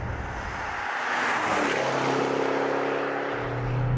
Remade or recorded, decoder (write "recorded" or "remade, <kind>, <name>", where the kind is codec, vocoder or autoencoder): recorded